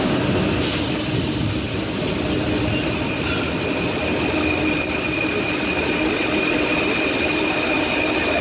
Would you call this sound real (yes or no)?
yes